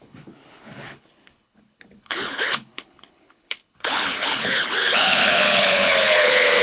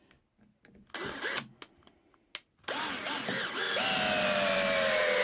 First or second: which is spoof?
first